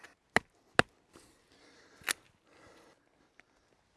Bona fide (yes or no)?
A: yes